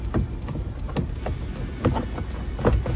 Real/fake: real